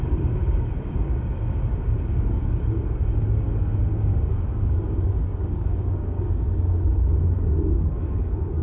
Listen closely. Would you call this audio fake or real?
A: fake